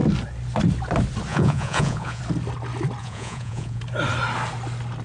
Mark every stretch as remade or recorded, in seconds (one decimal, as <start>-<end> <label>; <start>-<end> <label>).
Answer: 0.0-1.3 recorded; 1.3-2.2 remade; 2.2-3.0 recorded; 3.0-3.8 remade; 3.8-5.0 recorded

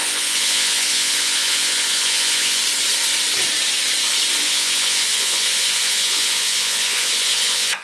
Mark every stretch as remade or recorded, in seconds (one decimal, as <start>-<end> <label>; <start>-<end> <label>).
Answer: 0.0-2.6 remade; 2.6-4.4 recorded; 4.4-7.8 remade